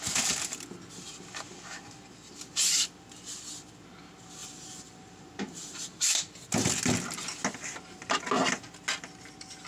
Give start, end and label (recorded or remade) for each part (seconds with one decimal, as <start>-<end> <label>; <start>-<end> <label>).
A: 0.0-4.4 recorded; 4.4-6.3 remade; 6.3-9.7 recorded